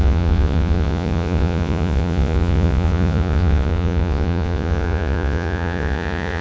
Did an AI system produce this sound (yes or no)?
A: yes